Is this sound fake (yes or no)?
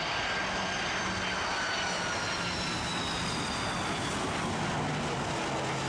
no